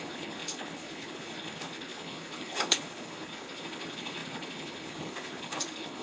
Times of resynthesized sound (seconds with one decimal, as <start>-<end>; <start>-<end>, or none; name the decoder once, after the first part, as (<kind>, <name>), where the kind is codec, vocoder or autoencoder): 0.0-6.0 (codec, HILCodec)